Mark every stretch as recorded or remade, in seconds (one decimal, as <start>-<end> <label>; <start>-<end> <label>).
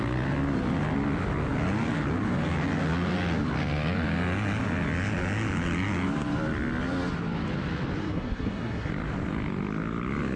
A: 0.0-8.0 recorded; 8.0-8.9 remade; 8.9-10.4 recorded